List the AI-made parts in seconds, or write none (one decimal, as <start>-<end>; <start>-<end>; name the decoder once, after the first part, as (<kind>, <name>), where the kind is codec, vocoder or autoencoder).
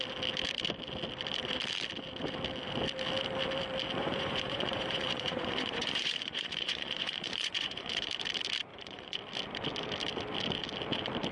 4.0-8.1 (vocoder, Vocos); 8.7-9.2